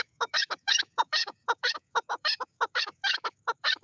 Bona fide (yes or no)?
no